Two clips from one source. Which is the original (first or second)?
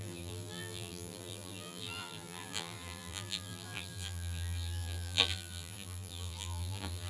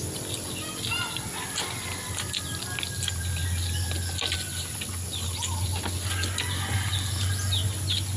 second